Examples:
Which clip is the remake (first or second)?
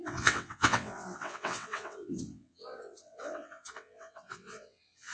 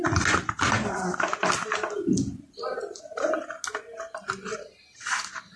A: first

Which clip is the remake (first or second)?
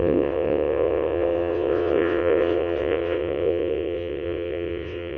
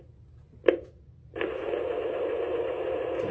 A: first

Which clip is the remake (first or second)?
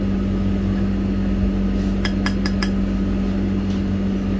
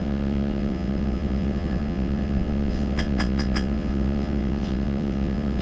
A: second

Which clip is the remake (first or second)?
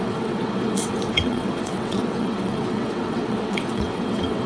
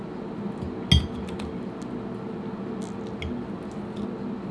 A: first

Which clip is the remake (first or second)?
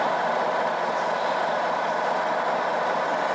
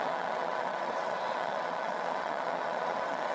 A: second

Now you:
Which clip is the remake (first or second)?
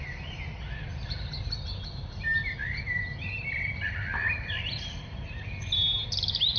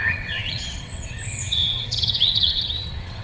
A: second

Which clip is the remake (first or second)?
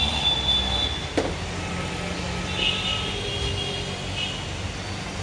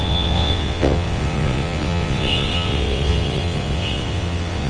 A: second